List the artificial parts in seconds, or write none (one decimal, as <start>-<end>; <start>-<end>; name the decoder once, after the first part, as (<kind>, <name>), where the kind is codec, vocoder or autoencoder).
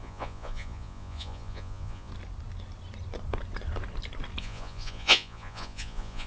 0.0-2.1 (vocoder, Vocos); 4.4-6.3